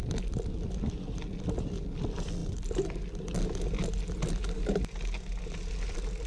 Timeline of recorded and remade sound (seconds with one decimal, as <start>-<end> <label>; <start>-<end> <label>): 0.0-6.3 recorded